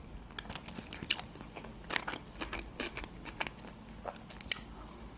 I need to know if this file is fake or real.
real